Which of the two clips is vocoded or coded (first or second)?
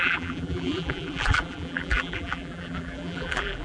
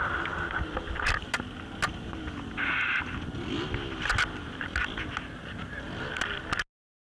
first